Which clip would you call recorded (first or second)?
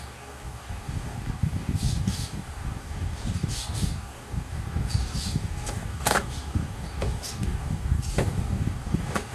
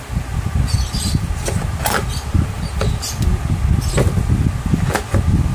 second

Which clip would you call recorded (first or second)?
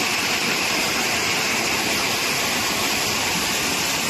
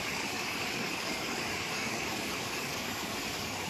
first